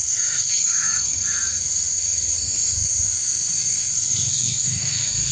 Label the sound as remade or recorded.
remade